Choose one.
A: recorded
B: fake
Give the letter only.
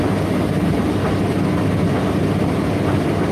A